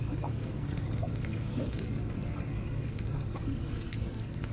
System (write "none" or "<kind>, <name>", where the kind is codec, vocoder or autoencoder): codec, SNAC